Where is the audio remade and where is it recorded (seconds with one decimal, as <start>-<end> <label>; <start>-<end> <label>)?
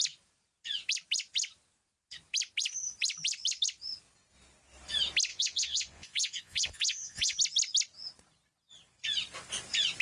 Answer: 0.0-5.3 recorded; 5.3-7.4 remade; 7.4-10.0 recorded